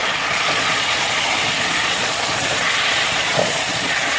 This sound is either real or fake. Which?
fake